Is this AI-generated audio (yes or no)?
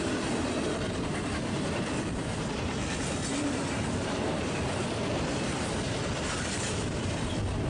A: yes